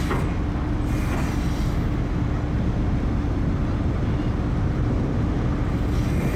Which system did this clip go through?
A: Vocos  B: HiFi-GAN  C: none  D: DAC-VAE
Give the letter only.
C